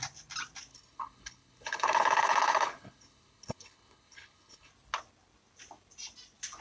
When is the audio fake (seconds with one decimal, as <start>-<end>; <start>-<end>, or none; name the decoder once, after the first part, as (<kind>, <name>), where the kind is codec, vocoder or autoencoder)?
0.7-4.7 (codec, HILCodec)